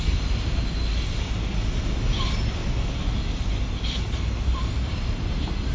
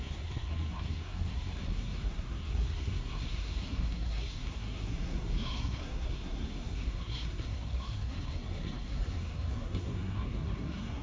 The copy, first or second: second